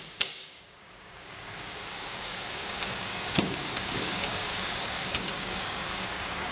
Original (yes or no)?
no